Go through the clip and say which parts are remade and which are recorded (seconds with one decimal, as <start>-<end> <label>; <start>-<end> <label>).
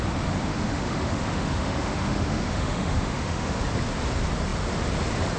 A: 0.0-0.5 recorded; 0.5-3.6 remade; 3.6-5.4 recorded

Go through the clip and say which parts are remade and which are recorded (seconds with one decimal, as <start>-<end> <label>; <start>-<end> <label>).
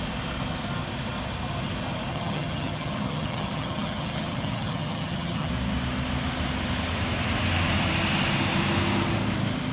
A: 0.0-2.1 recorded; 2.1-5.5 remade; 5.5-9.7 recorded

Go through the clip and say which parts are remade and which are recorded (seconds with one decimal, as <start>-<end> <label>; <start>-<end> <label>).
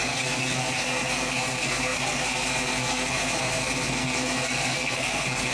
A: 0.0-5.5 remade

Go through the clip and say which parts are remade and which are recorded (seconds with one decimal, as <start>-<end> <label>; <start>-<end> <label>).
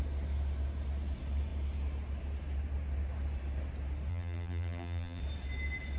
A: 0.0-4.1 recorded; 4.1-5.2 remade; 5.2-6.0 recorded